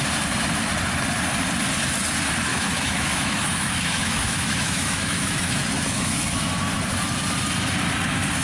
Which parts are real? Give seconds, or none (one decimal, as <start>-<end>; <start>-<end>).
0.0-2.5; 6.5-8.4

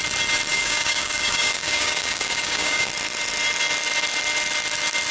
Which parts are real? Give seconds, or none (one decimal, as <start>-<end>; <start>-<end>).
0.0-0.5; 2.9-5.1